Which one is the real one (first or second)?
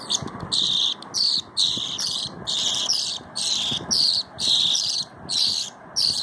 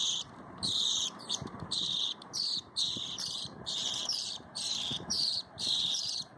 first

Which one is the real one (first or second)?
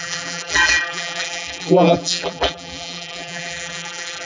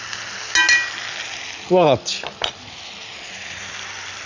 second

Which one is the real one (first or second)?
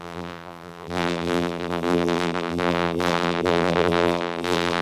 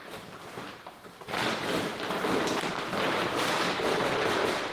second